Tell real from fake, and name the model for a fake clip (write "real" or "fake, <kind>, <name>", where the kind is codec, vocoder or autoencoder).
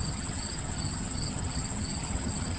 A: fake, vocoder, HiFi-GAN